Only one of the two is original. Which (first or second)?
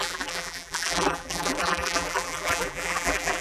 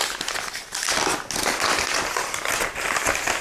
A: second